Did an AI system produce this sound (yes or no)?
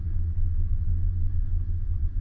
yes